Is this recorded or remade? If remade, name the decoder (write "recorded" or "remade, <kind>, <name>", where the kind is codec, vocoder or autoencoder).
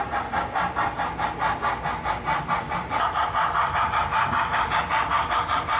recorded